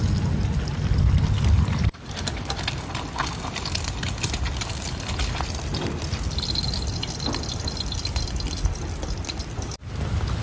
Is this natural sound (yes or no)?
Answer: yes